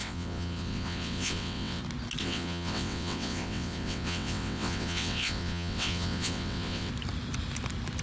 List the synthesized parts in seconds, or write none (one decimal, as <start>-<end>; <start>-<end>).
0.0-1.8; 2.2-6.9